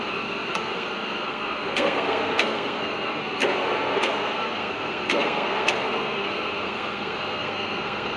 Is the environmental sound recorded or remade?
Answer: remade